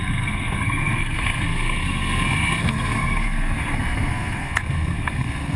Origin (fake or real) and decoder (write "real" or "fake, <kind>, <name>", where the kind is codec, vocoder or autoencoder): fake, codec, SNAC